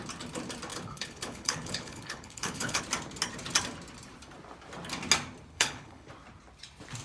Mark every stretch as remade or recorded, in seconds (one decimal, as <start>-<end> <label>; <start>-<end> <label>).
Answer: 0.0-0.7 recorded; 0.7-2.8 remade; 2.8-5.5 recorded; 5.5-6.1 remade; 6.1-7.0 recorded